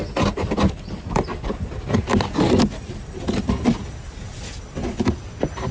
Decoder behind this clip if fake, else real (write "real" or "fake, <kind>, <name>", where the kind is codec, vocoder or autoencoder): real